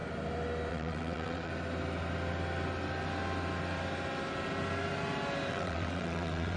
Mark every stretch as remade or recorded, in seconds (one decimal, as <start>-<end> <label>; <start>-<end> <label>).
0.0-0.7 recorded; 0.7-1.5 remade; 1.5-5.5 recorded; 5.5-6.6 remade